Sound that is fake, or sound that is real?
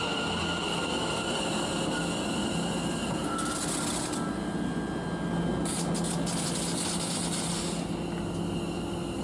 real